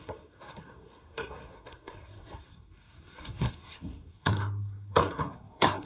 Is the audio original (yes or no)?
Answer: no